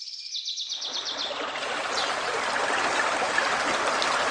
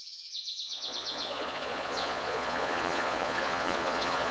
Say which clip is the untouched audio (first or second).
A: first